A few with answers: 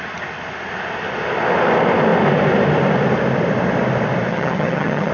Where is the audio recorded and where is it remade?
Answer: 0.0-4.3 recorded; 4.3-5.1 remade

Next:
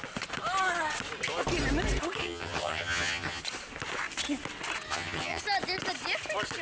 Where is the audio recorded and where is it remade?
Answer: 0.0-2.2 recorded; 2.2-3.4 remade; 3.4-4.9 recorded; 4.9-5.4 remade; 5.4-6.6 recorded

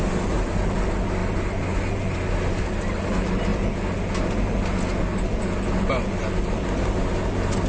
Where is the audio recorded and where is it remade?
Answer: 0.0-7.7 recorded

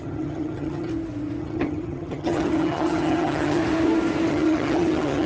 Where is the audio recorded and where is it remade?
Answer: 0.0-0.9 remade; 0.9-1.4 recorded; 1.4-3.6 remade; 3.6-4.3 recorded; 4.3-5.3 remade

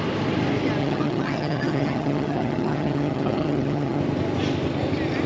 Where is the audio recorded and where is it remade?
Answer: 0.0-0.8 recorded; 0.8-4.0 remade; 4.0-5.3 recorded

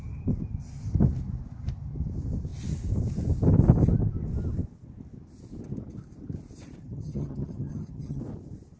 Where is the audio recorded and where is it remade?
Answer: 0.0-6.8 recorded; 6.8-8.2 remade; 8.2-8.8 recorded

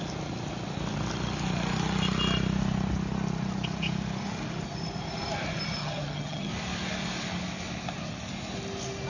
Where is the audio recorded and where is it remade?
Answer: 0.0-5.8 recorded; 5.8-6.5 remade; 6.5-9.1 recorded

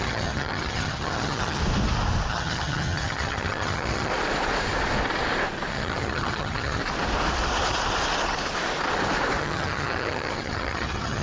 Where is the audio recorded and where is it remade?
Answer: 0.0-1.6 remade; 1.6-2.3 recorded; 2.3-4.1 remade; 4.1-5.7 recorded; 5.7-6.8 remade; 6.8-9.4 recorded; 9.4-11.2 remade